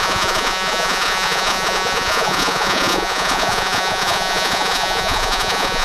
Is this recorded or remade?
remade